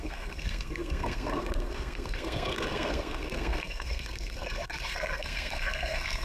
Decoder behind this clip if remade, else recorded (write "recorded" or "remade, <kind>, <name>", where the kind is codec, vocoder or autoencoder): remade, codec, SNAC